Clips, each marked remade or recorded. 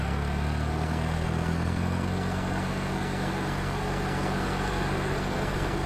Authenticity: remade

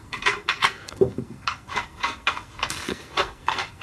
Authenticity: remade